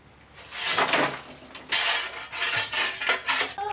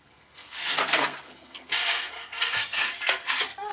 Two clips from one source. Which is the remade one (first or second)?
second